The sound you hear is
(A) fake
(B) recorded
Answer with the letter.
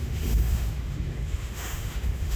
A